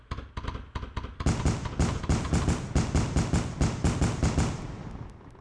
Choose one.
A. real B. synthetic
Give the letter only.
A